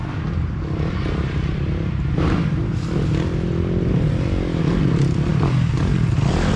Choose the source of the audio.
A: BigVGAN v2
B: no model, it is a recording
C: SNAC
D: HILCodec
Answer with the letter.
A